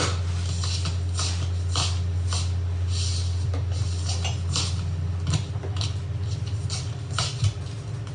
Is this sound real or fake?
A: real